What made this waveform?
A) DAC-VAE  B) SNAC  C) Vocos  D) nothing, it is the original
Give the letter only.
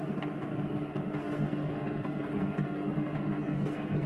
B